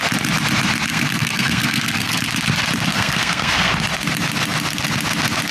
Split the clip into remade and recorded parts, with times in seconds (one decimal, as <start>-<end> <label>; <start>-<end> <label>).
0.0-0.9 recorded; 0.9-2.2 remade; 2.2-2.9 recorded; 2.9-3.7 remade; 3.7-5.5 recorded